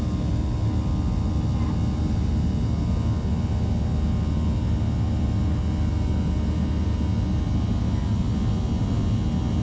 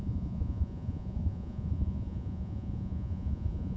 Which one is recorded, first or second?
first